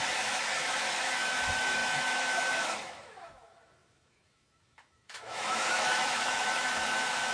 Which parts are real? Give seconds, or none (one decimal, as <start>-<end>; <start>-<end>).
none